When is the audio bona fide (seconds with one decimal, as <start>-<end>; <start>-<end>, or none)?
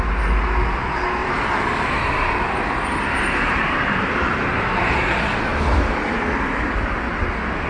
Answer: 0.0-1.2; 4.6-7.7